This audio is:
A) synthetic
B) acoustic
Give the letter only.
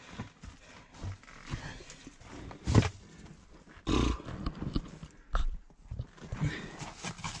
B